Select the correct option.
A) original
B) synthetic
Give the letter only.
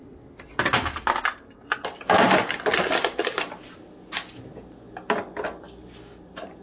A